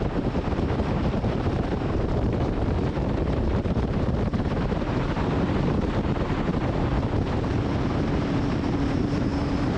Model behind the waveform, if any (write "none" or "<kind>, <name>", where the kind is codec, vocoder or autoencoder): vocoder, BigVGAN v2